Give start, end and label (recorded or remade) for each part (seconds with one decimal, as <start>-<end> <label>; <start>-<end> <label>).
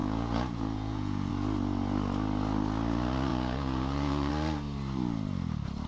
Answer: 0.0-1.3 remade; 1.3-3.3 recorded; 3.3-4.3 remade; 4.3-5.9 recorded